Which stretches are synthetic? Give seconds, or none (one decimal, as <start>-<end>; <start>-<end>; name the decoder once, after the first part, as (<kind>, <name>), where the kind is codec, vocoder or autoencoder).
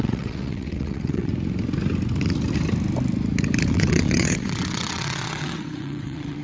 0.0-1.3 (vocoder, WaveNeXt); 3.7-6.4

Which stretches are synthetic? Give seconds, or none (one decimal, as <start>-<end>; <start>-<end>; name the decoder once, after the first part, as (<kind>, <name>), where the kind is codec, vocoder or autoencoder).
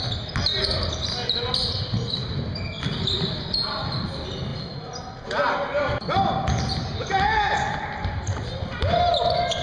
none